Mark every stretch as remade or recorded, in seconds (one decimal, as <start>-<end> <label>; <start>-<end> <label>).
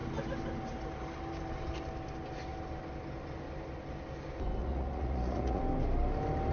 0.0-4.6 recorded; 4.6-5.6 remade; 5.6-6.5 recorded